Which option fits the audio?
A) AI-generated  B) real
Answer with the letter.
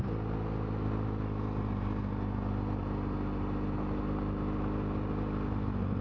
B